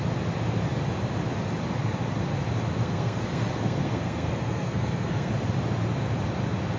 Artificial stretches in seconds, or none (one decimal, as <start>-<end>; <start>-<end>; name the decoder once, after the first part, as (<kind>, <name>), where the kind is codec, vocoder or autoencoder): 2.8-5.3 (codec, SNAC)